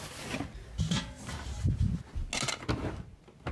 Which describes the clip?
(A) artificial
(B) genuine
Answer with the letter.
B